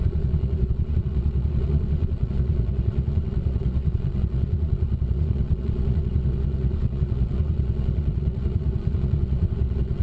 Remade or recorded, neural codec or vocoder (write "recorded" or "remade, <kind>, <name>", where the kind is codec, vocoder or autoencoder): remade, vocoder, Vocos